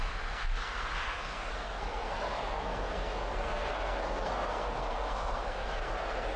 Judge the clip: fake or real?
fake